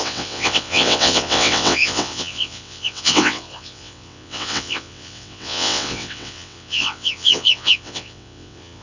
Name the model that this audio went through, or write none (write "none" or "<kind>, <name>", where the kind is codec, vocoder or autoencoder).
vocoder, WaveNeXt